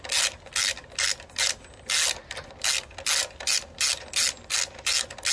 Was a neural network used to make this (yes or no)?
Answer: no